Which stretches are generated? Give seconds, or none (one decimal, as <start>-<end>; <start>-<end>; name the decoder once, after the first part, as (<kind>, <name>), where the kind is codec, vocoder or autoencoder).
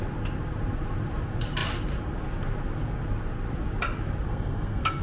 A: 4.3-5.0 (codec, SNAC)